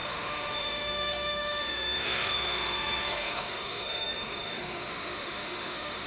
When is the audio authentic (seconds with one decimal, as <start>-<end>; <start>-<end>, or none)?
none